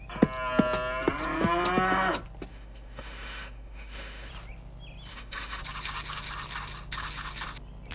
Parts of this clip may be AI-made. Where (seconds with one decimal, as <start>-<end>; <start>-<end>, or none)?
2.5-4.3; 5.1-5.6